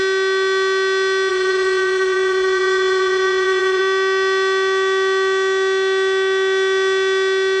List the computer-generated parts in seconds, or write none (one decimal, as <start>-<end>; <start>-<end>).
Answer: 1.3-3.8